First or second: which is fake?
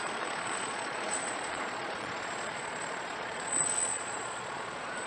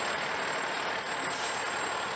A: first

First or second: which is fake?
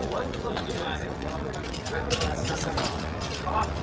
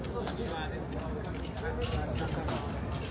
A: first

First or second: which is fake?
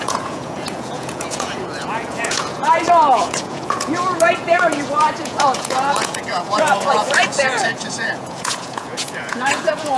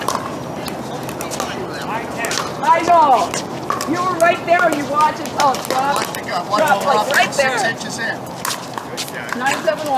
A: first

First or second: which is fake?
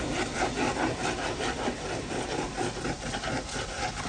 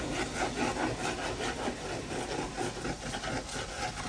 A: first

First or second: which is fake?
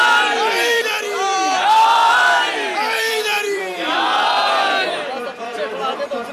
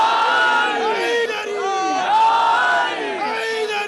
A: first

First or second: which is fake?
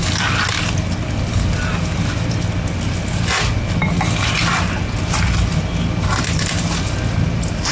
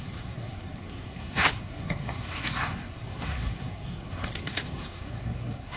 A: second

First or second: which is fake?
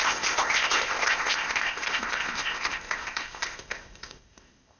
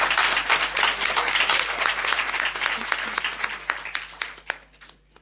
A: first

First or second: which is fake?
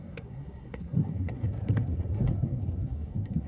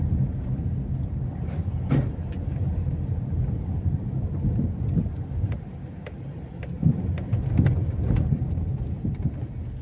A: first